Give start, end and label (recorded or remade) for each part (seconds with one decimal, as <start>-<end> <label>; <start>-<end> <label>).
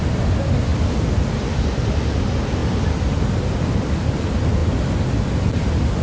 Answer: 0.0-6.0 recorded